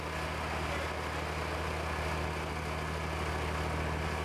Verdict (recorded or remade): recorded